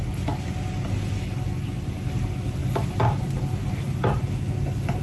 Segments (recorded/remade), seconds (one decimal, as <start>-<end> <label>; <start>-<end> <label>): 0.0-2.6 recorded; 2.6-4.2 remade; 4.2-5.0 recorded